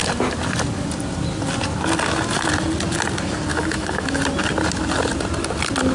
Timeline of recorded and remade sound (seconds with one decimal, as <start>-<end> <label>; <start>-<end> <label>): 0.0-3.5 recorded; 3.5-4.2 remade; 4.2-5.9 recorded